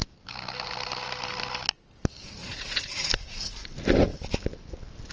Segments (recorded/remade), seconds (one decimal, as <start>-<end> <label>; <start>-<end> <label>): 0.0-2.4 recorded; 2.4-3.1 remade; 3.1-5.1 recorded